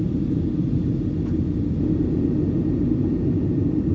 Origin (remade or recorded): recorded